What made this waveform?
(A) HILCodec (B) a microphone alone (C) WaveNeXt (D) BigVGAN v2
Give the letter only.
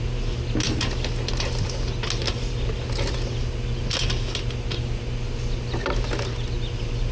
B